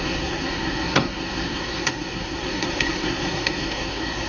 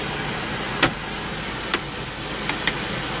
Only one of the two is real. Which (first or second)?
second